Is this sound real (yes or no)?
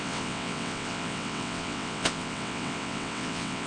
no